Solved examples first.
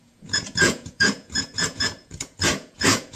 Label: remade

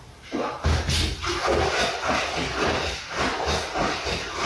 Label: recorded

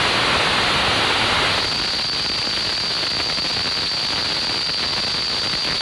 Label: recorded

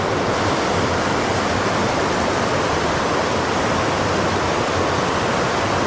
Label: recorded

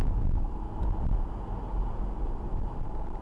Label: recorded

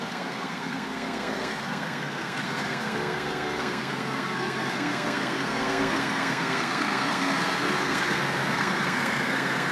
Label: remade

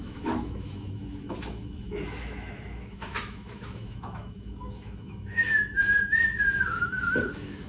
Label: remade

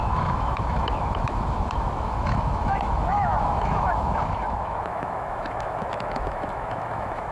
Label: remade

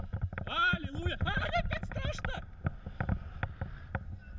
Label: recorded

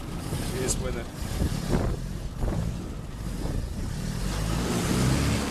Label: recorded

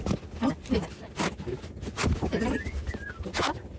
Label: recorded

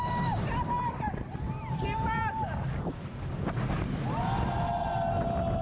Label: recorded